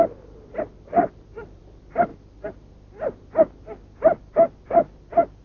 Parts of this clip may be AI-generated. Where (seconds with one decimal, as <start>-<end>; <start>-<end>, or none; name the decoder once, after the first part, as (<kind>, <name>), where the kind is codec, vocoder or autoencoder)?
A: 0.9-1.6 (vocoder, BigVGAN v2)